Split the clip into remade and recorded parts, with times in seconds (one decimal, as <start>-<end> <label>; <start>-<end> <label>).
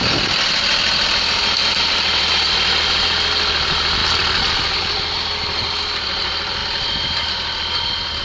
0.0-8.2 recorded